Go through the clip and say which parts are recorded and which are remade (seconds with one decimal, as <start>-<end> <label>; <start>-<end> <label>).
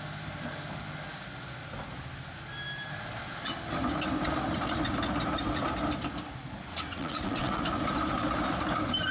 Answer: 0.0-6.7 recorded; 6.7-7.6 remade; 7.6-9.1 recorded